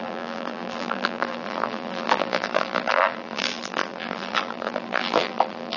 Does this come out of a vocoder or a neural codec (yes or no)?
yes